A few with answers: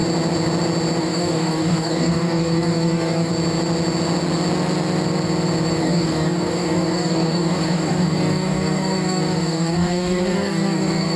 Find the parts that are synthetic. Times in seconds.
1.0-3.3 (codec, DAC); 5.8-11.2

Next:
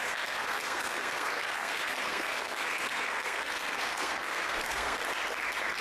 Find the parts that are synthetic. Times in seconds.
0.0-5.0 (codec, SNAC)

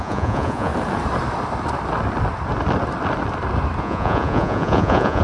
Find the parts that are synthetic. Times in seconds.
0.0-0.7 (vocoder, Vocos); 3.8-5.2

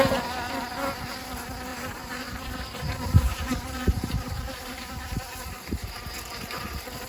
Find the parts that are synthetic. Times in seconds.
1.7-6.0 (vocoder, BigVGAN v2)

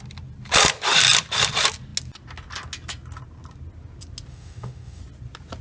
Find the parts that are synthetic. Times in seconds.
4.3-5.0 (autoencoder, DAC-VAE)